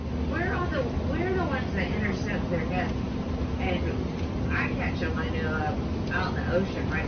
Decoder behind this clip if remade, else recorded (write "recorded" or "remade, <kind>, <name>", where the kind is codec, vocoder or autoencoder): recorded